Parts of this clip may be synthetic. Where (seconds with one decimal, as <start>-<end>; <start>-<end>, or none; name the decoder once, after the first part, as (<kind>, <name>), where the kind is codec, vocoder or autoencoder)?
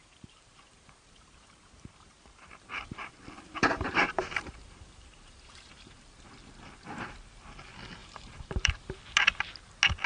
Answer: 0.0-3.1 (vocoder, BigVGAN v2); 3.6-6.0; 8.0-9.0